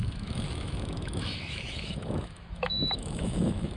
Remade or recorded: remade